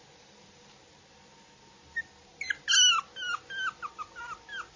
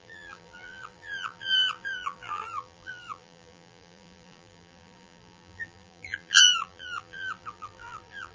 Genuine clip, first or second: first